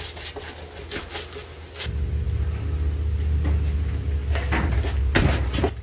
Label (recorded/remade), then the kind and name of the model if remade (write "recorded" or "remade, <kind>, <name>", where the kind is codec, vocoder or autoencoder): recorded